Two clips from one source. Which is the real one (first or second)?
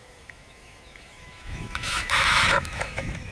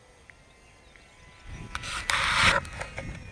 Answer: second